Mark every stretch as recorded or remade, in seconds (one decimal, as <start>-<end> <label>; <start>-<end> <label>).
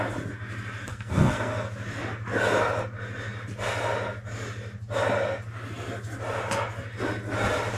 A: 0.0-0.9 recorded; 0.9-1.7 remade; 1.7-7.8 recorded